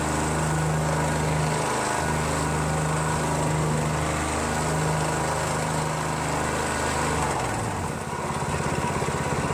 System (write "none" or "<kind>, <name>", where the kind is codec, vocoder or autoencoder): none